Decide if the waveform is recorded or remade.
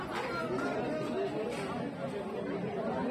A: recorded